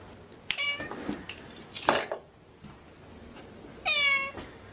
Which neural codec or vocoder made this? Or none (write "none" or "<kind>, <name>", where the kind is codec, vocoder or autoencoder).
none